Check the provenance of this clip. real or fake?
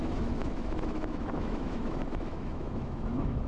fake